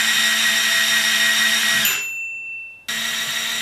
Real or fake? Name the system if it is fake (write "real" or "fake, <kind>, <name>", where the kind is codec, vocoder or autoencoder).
real